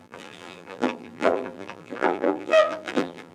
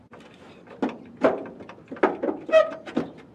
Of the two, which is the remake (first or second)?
first